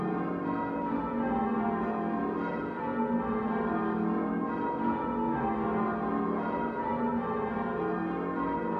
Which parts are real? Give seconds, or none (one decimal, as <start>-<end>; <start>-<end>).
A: 0.0-8.8